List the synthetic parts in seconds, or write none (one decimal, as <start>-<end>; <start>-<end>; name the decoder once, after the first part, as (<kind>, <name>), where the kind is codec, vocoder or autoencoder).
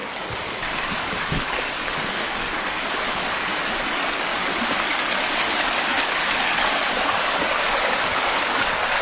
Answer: 0.0-9.0 (codec, DAC)